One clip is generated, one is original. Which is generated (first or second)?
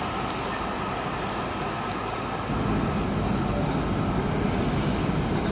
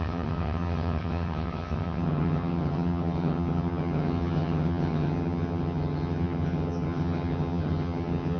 second